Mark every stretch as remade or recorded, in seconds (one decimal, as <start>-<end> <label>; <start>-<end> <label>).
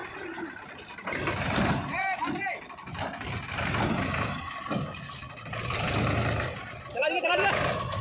0.0-8.0 remade